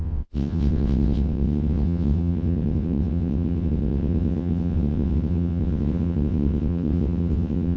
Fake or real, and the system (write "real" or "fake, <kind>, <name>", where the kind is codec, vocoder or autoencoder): fake, vocoder, WaveNeXt